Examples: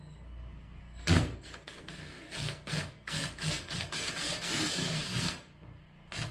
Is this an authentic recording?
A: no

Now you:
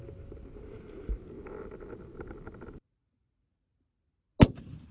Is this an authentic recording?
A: yes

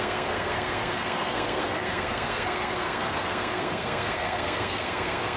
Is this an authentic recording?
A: no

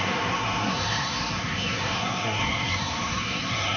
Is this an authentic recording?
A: no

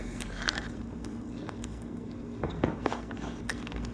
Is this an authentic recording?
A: no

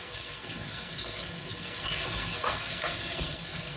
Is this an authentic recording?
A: no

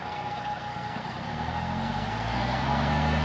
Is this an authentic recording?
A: no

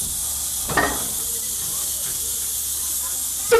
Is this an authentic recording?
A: yes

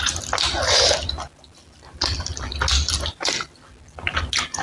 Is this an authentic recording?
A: yes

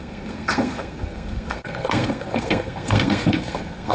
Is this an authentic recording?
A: no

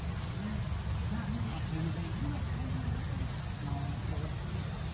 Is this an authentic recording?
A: yes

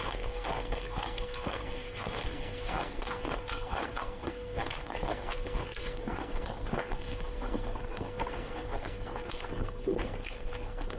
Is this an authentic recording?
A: no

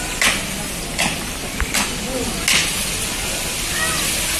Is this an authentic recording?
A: yes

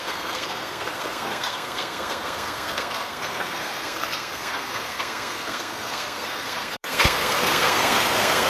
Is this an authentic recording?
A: no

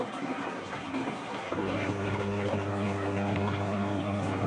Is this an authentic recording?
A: no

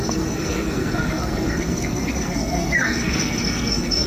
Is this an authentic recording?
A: no